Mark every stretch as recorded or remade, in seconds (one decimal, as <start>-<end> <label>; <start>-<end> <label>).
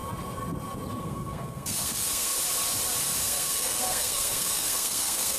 0.0-1.0 recorded; 1.0-2.3 remade; 2.3-3.2 recorded; 3.2-5.4 remade